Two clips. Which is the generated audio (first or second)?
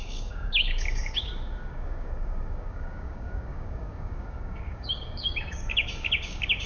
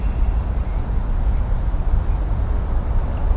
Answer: first